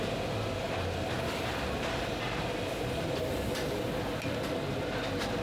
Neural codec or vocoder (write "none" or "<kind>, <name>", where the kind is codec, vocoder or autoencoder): none